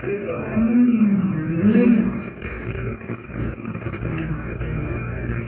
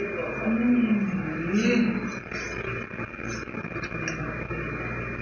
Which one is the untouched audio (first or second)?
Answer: second